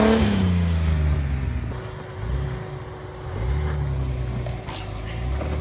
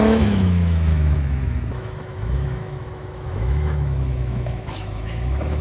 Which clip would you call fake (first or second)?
second